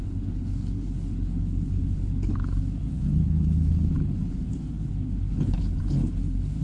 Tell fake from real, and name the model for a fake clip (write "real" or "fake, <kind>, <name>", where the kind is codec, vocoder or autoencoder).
fake, codec, HILCodec